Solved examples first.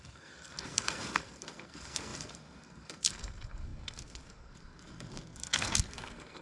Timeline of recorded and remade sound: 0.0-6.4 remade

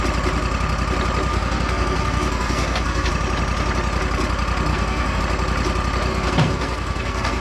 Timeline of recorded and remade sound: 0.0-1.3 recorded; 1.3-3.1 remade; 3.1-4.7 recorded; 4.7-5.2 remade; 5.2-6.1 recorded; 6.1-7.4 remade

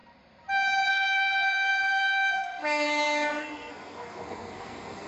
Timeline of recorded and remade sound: 0.0-0.9 recorded; 0.9-5.1 remade